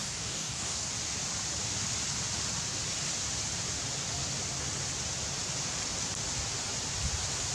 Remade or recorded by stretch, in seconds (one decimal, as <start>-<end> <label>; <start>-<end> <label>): 0.0-0.9 remade; 0.9-7.5 recorded